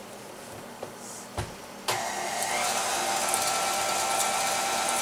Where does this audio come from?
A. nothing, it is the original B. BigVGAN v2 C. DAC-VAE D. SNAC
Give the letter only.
A